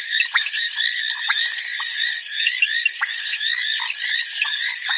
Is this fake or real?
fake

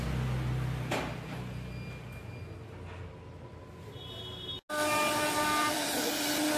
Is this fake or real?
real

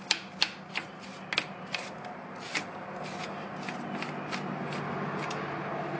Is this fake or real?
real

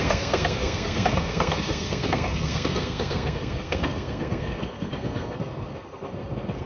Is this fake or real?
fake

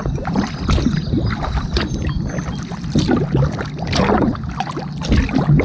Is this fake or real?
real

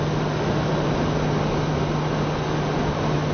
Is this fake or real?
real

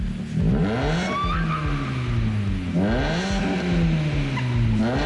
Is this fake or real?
real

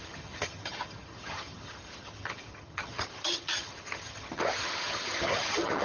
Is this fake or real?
fake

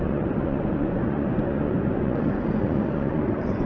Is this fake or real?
fake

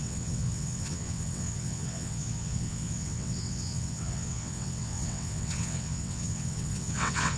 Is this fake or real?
fake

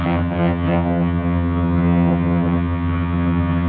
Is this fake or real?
fake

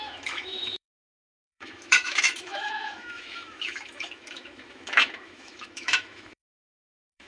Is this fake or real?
fake